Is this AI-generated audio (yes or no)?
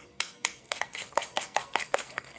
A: yes